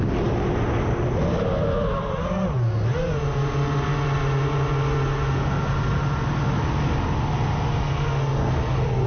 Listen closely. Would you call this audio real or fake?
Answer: real